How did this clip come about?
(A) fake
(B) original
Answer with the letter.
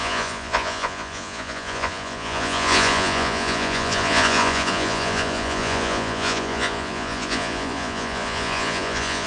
A